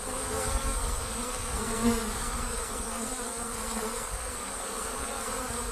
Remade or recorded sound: remade